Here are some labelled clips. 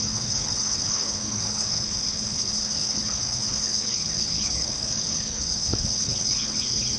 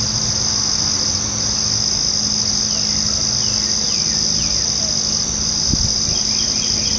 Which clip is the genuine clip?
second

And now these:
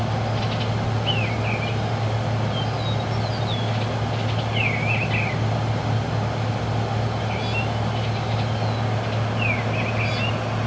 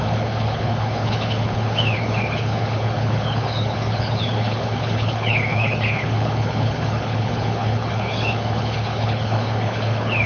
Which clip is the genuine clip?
first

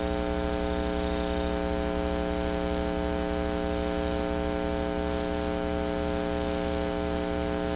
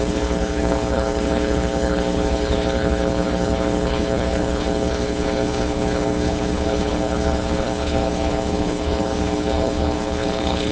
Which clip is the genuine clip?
first